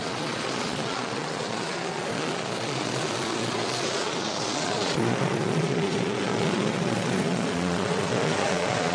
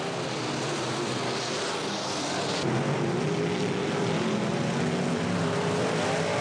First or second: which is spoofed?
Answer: first